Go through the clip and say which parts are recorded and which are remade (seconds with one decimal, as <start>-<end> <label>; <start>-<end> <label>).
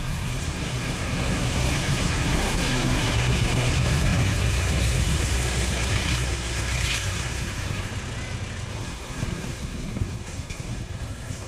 0.0-7.9 remade; 7.9-8.7 recorded; 8.7-11.5 remade